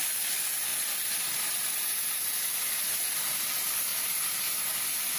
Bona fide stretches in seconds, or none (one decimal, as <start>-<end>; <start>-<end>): 0.0-3.9; 4.8-5.2